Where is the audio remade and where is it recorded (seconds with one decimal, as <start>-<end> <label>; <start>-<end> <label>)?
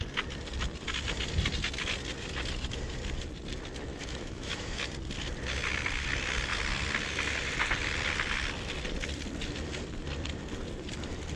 0.0-3.9 recorded; 3.9-4.8 remade; 4.8-11.4 recorded